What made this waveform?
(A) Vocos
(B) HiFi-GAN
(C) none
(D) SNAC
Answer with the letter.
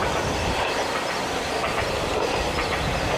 C